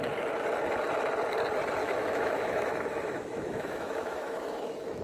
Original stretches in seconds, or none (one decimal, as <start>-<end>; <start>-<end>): 0.0-1.8